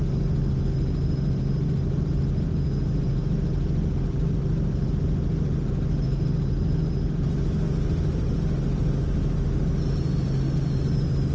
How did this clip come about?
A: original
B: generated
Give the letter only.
A